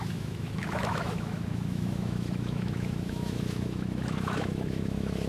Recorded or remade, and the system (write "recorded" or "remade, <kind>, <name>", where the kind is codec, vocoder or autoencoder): remade, autoencoder, DAC-VAE